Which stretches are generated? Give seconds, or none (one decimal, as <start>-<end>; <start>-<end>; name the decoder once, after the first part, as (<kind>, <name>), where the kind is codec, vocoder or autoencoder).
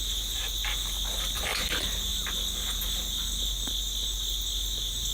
none